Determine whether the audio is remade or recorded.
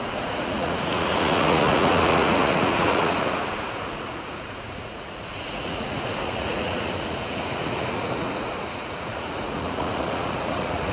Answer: remade